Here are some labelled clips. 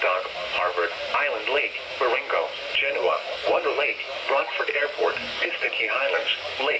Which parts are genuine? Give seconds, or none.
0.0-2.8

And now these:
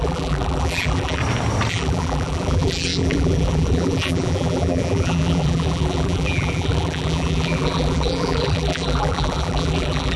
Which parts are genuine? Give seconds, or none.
1.2-1.7

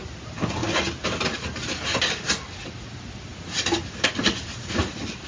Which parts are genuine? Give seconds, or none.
0.0-5.3